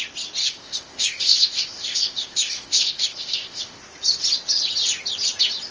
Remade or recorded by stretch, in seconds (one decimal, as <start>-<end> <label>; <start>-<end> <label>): 0.0-0.4 recorded; 0.4-3.8 remade; 3.8-5.7 recorded